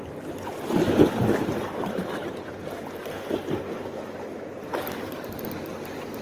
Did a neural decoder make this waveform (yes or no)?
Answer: no